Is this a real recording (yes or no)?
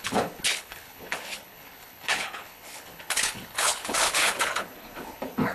no